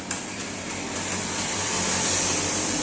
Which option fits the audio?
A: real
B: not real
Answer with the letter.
B